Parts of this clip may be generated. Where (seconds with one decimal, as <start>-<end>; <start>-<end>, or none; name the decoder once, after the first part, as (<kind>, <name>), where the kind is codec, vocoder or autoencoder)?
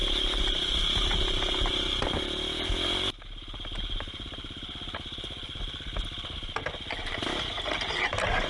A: none